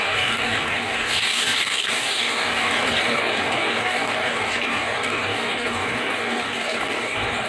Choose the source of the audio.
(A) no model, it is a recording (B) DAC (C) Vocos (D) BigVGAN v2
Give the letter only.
B